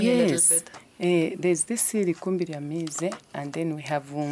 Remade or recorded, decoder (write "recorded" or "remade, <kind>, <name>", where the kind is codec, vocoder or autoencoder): recorded